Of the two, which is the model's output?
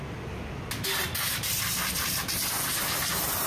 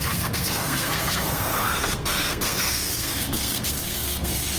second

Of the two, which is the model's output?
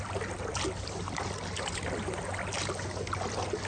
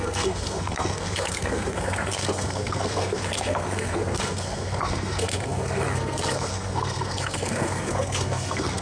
second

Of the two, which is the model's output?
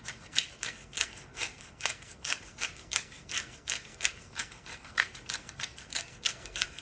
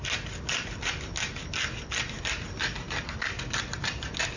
first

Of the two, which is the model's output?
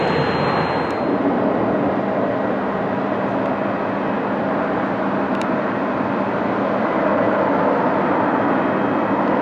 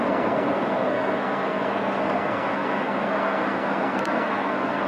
second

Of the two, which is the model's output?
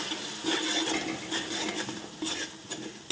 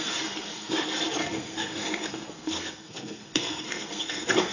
second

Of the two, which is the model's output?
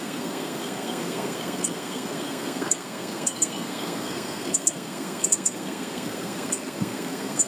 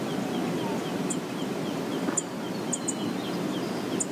first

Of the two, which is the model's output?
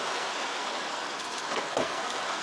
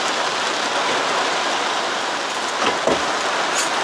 first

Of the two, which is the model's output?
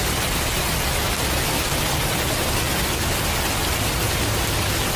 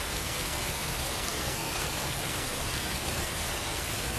second